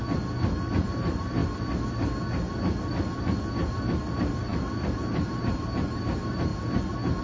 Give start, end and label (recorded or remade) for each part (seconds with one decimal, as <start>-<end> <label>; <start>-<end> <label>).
0.0-0.8 recorded; 0.8-1.4 remade; 1.4-4.0 recorded; 4.0-6.5 remade; 6.5-7.2 recorded